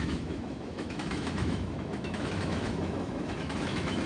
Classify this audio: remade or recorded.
remade